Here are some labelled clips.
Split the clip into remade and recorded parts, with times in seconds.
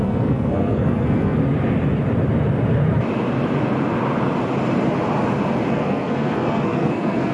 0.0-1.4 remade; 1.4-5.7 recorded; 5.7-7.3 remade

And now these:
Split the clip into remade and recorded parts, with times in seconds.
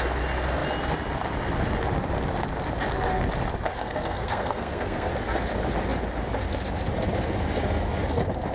0.0-3.7 recorded; 3.7-5.1 remade; 5.1-8.5 recorded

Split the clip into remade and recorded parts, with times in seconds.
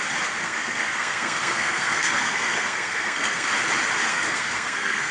0.0-0.4 recorded; 0.4-3.5 remade; 3.5-4.1 recorded; 4.1-5.1 remade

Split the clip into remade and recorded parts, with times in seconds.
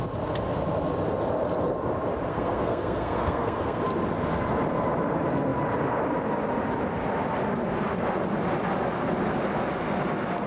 0.0-2.3 recorded; 2.3-3.8 remade; 3.8-10.5 recorded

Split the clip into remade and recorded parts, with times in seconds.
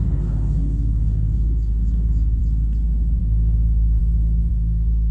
0.0-2.4 remade; 2.4-3.2 recorded; 3.2-4.0 remade; 4.0-4.5 recorded; 4.5-5.1 remade